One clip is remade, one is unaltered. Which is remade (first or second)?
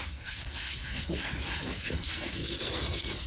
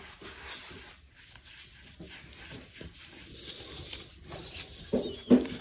first